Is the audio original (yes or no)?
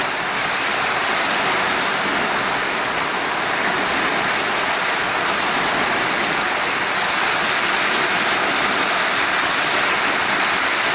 yes